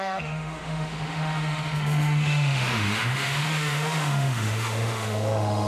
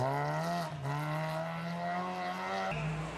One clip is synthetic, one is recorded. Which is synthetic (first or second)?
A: first